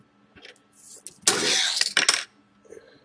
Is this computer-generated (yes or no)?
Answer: no